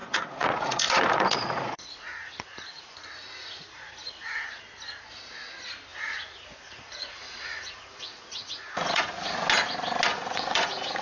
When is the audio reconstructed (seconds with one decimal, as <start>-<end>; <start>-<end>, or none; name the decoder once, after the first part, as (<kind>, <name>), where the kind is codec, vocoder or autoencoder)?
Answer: 0.0-4.6 (vocoder, Vocos); 5.9-9.5; 10.1-11.0